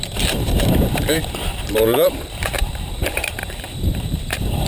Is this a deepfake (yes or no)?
yes